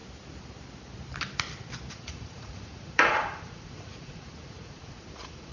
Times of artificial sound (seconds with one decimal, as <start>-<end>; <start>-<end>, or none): 1.9-5.5